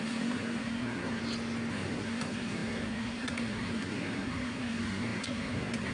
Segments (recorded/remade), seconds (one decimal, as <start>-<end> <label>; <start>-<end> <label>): 0.0-1.2 remade; 1.2-1.7 recorded; 1.7-5.9 remade

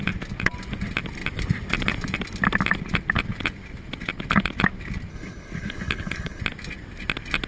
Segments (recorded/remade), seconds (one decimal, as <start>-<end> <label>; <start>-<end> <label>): 0.0-5.1 recorded; 5.1-6.4 remade; 6.4-7.5 recorded

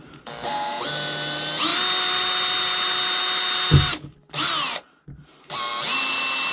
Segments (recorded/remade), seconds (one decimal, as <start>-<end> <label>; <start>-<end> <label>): 0.0-6.5 recorded

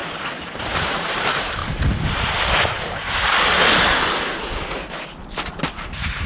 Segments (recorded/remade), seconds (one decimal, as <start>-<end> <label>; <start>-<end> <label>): 0.0-0.7 recorded; 0.7-1.6 remade; 1.6-5.4 recorded; 5.4-6.3 remade

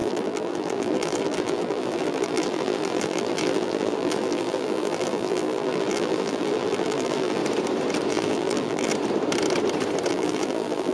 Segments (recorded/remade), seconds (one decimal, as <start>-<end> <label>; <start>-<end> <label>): 0.0-7.4 remade; 7.4-8.1 recorded; 8.1-8.9 remade; 8.9-10.1 recorded; 10.1-10.9 remade

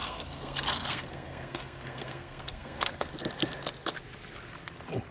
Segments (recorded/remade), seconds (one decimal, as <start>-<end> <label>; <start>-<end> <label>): 0.0-3.1 remade; 3.1-5.1 recorded

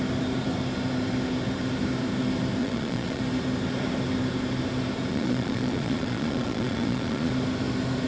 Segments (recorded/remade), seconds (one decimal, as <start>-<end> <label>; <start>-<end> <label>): 0.0-2.6 recorded; 2.6-3.2 remade; 3.2-5.1 recorded; 5.1-7.3 remade; 7.3-8.1 recorded